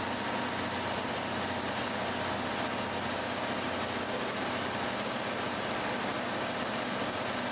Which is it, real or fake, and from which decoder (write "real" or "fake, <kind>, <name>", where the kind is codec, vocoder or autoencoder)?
real